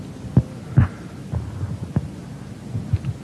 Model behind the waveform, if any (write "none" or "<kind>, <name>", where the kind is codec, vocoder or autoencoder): none